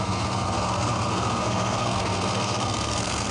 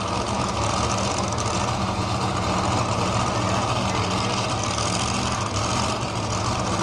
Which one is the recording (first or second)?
second